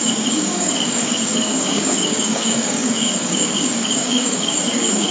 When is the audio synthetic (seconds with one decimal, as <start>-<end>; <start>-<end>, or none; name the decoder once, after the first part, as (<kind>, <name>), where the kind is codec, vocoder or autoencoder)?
0.0-5.1 (codec, DAC)